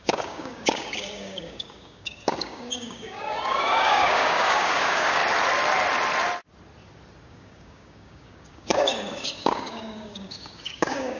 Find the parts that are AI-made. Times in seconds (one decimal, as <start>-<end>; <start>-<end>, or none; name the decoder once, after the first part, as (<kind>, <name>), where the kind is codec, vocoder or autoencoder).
0.0-5.2 (codec, DAC); 7.3-11.2